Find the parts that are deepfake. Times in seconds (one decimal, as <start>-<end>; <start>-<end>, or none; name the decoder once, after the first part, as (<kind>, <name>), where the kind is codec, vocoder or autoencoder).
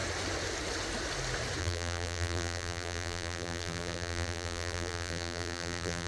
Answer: 1.6-6.1 (vocoder, BigVGAN v2)